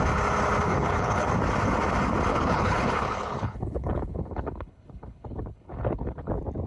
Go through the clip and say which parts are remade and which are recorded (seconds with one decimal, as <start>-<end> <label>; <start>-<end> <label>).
0.0-0.7 recorded; 0.7-1.3 remade; 1.3-2.3 recorded; 2.3-6.3 remade; 6.3-6.7 recorded